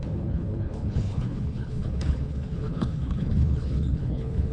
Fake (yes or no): yes